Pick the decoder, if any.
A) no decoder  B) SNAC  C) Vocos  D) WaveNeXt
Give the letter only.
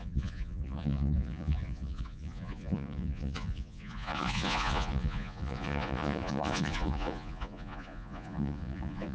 C